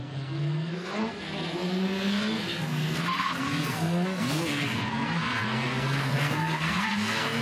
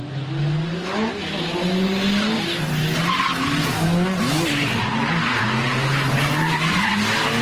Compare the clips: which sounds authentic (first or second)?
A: second